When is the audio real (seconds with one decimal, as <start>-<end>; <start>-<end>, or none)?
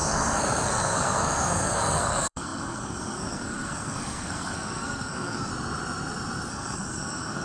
5.5-6.5